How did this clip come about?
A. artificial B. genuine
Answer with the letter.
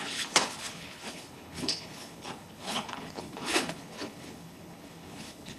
A